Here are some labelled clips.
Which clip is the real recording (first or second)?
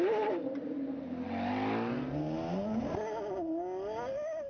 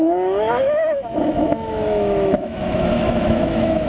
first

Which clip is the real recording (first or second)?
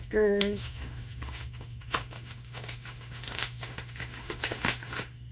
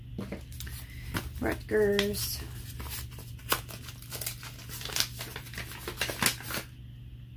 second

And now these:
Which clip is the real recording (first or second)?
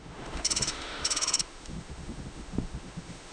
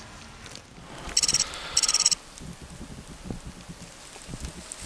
second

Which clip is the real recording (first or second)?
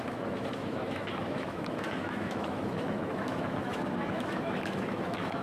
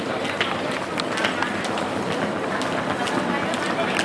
second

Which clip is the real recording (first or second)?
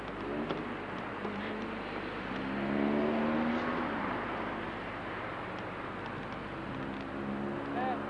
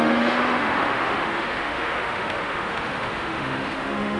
first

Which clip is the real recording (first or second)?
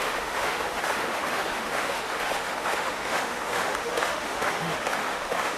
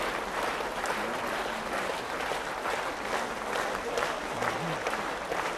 second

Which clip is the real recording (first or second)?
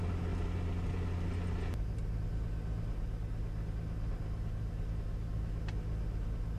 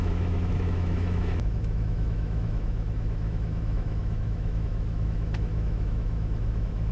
first